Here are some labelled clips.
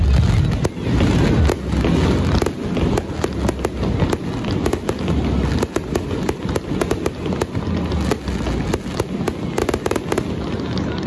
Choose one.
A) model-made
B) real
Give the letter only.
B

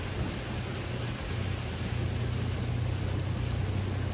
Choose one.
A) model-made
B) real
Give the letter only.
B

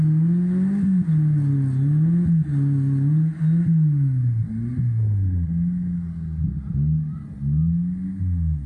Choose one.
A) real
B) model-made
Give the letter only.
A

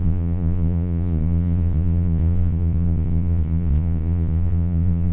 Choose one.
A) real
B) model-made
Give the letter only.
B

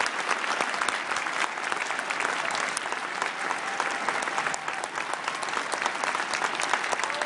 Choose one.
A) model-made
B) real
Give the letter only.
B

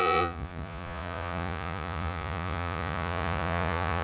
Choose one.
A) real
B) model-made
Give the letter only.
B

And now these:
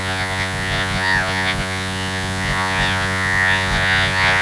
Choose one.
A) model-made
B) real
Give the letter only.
A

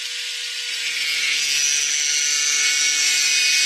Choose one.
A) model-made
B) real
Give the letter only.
B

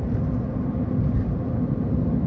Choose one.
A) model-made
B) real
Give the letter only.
B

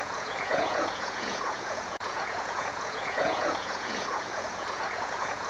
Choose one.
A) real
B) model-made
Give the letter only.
B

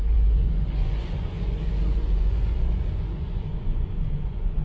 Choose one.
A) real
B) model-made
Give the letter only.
B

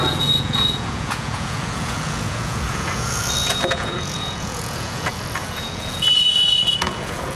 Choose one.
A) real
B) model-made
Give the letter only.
B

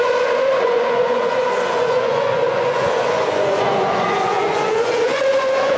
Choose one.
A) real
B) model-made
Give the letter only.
B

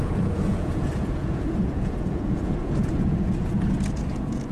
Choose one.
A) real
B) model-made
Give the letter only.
B